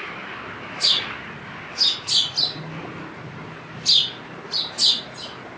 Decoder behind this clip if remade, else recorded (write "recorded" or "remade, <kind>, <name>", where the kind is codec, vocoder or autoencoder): recorded